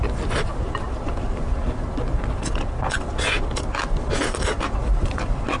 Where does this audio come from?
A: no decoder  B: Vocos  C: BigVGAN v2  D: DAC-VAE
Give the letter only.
A